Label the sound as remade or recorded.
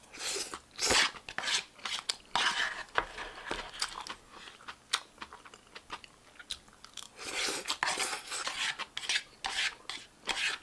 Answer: recorded